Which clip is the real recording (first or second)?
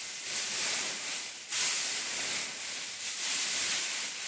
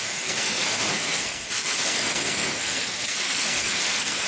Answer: first